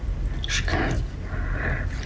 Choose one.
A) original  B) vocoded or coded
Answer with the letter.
A